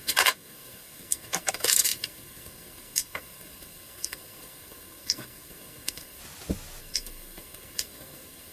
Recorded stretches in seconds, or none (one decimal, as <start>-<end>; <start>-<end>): 6.2-6.8

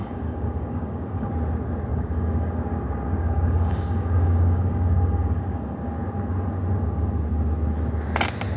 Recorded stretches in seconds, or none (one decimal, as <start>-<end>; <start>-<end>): 1.3-1.9; 5.9-8.6

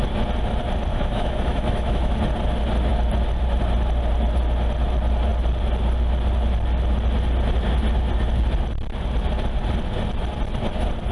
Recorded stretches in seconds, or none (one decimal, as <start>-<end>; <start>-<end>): 0.0-0.9; 2.2-11.1

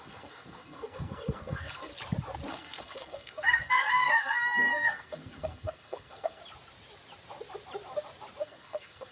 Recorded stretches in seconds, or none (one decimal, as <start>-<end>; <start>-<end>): 1.9-2.5; 6.4-8.4

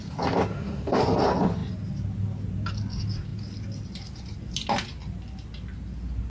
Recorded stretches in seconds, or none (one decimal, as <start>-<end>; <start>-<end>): 0.0-0.5; 1.0-6.3

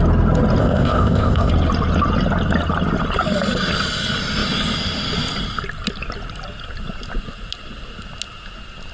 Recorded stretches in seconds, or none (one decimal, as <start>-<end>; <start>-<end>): 0.0-0.6; 1.5-8.9